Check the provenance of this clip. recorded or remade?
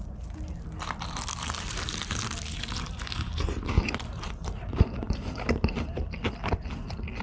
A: recorded